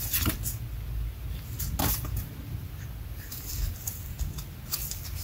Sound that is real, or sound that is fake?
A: real